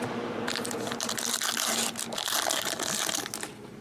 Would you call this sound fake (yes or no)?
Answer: no